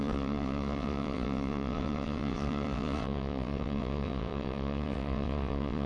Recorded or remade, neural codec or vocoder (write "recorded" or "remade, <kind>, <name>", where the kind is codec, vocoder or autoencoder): remade, vocoder, WaveNeXt